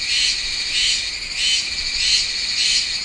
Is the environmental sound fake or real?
real